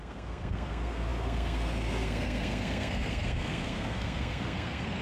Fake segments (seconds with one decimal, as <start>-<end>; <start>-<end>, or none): 0.0-5.0